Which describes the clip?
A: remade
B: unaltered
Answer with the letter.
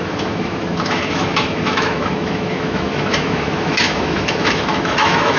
A